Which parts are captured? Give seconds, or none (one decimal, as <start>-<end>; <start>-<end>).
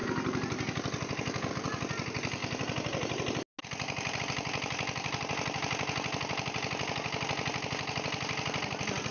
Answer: 0.0-9.1